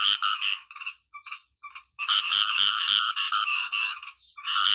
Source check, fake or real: fake